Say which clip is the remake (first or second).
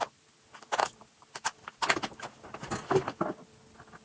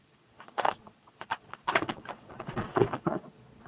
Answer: second